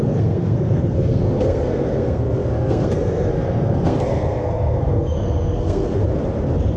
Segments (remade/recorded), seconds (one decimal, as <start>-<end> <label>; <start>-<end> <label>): 0.0-6.0 remade; 6.0-6.8 recorded